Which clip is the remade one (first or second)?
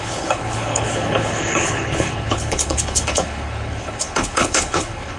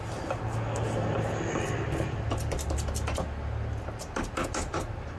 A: first